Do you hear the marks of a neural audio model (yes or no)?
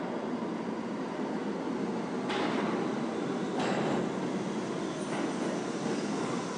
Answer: no